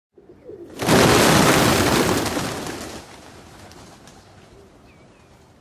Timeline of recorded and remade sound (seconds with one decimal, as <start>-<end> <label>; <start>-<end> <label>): 0.0-5.6 recorded